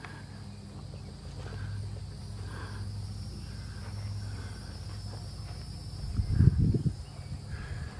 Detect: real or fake real